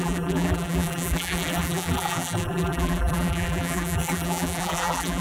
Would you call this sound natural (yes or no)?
no